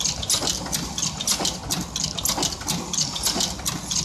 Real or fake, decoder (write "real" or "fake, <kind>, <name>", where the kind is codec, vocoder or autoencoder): real